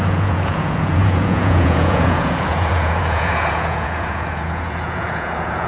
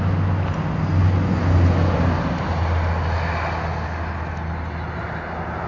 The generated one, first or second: first